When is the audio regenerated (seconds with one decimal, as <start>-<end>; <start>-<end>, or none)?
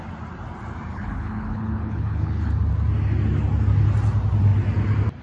0.9-2.5